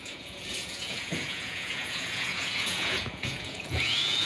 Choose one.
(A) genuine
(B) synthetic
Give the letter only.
B